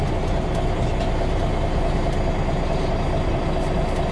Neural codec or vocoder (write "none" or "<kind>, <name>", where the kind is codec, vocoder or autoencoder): none